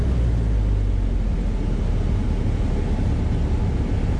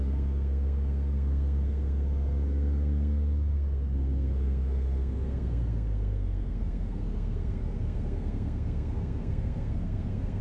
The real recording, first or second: first